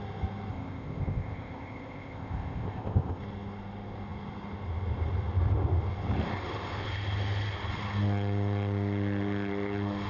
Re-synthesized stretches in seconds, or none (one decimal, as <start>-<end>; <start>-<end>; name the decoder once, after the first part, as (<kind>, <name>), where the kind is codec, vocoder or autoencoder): 0.5-3.2 (codec, ZipCodec)